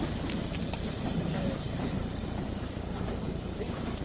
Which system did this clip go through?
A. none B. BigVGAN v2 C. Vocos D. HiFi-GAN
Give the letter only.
B